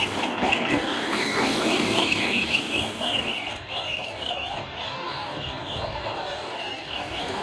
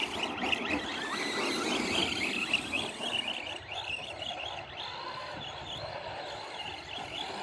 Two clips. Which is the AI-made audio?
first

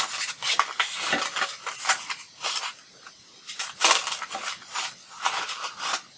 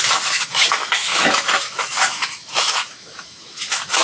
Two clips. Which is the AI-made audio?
second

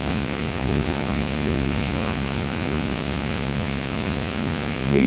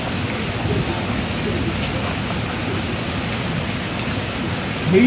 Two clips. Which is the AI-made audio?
first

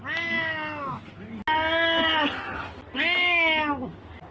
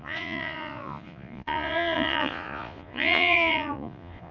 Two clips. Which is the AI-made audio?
second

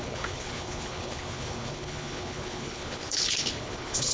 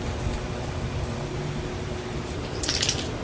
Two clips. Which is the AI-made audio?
first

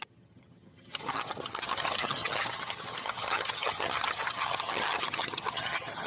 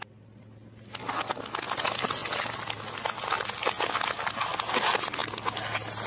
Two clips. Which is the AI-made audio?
first